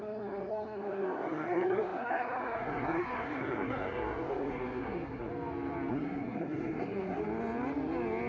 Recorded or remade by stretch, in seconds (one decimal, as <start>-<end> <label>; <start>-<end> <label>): 0.0-5.3 remade; 5.3-5.9 recorded; 5.9-7.2 remade; 7.2-8.3 recorded